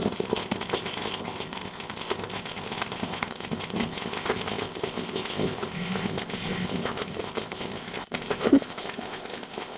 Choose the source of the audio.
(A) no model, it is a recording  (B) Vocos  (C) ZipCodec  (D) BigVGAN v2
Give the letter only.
C